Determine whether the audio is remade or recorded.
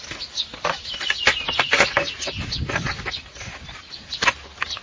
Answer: recorded